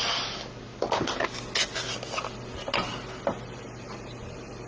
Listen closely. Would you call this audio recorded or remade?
recorded